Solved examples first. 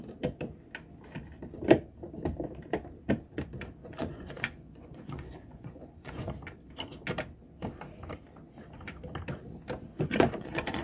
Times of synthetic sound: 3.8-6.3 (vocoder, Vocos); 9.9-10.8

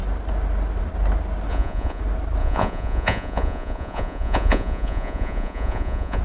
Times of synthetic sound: 1.5-2.0 (vocoder, Vocos); 2.4-6.2

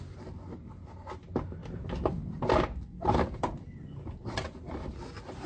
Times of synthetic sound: none

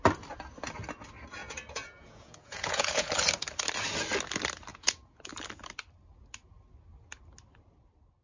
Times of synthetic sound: 1.4-3.1 (vocoder, Vocos); 4.7-5.3

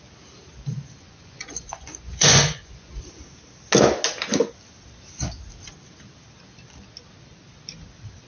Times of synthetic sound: 1.0-2.9 (vocoder, Vocos)

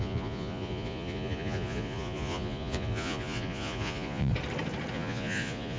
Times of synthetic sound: 0.0-4.3 (vocoder, Vocos); 4.9-5.8

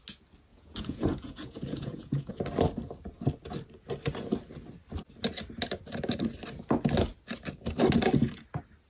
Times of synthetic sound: 0.5-2.3 (vocoder, Vocos)